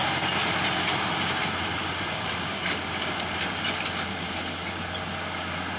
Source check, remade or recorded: recorded